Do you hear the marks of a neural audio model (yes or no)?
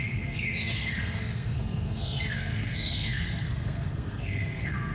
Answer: yes